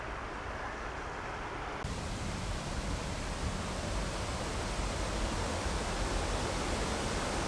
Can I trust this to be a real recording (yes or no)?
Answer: yes